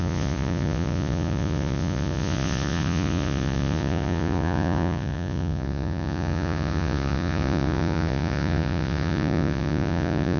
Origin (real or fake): fake